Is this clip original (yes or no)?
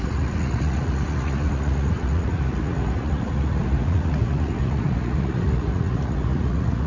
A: no